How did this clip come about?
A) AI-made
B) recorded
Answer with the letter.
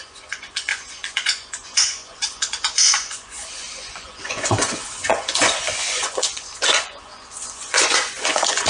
A